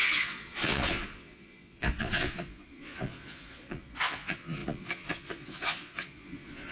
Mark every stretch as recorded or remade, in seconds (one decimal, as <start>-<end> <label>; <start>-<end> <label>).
0.0-6.7 remade